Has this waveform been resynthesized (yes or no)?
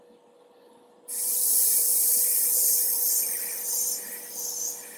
no